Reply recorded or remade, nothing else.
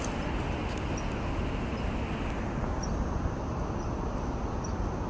recorded